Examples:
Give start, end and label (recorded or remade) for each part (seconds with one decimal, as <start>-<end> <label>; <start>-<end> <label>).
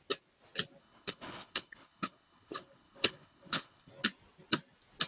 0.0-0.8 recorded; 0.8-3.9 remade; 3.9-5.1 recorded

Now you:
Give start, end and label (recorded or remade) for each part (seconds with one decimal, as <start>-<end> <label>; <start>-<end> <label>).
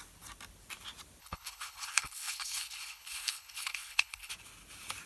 0.0-1.2 recorded; 1.2-4.3 remade; 4.3-5.1 recorded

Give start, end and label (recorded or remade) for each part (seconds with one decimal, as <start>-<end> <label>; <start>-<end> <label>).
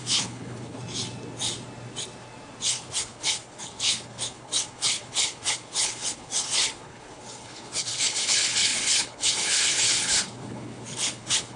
0.0-0.8 remade; 0.8-2.6 recorded; 2.6-11.6 remade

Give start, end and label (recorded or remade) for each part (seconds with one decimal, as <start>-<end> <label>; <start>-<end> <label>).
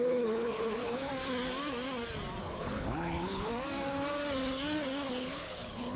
0.0-1.1 remade; 1.1-2.4 recorded; 2.4-3.5 remade; 3.5-5.1 recorded; 5.1-6.0 remade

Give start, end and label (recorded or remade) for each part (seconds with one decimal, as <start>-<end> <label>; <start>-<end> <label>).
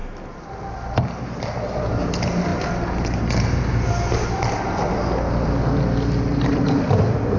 0.0-7.4 recorded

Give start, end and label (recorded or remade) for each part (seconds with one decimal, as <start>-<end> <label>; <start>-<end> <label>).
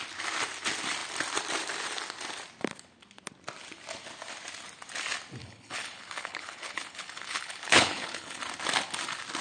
0.0-5.4 recorded; 5.4-8.4 remade; 8.4-9.4 recorded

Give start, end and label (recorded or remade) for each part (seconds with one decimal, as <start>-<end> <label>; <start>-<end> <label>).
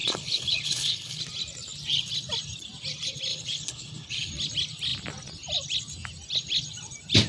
0.0-1.2 remade; 1.2-3.3 recorded; 3.3-4.3 remade; 4.3-7.3 recorded